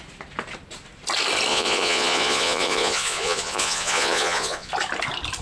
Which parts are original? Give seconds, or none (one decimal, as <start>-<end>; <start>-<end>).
0.0-1.5; 4.7-5.4